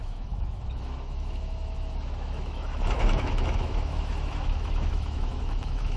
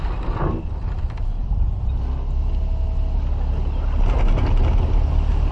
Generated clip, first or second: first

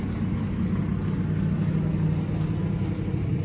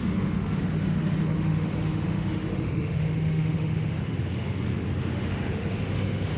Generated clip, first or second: second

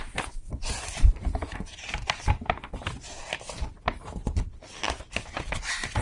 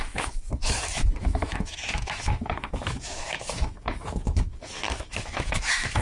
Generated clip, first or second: second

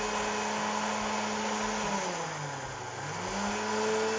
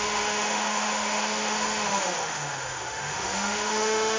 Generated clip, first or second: second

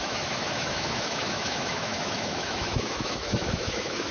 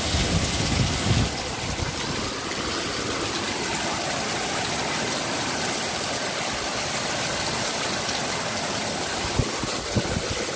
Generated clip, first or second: first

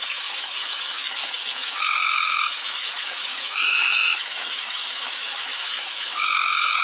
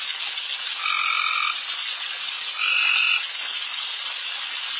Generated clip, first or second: first